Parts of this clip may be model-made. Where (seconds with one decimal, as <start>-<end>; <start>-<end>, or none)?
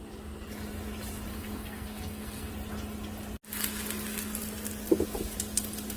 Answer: 1.3-2.5